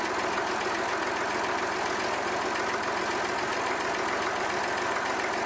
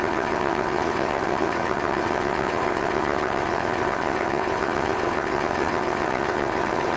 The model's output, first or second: second